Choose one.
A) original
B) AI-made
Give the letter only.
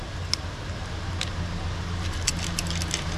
A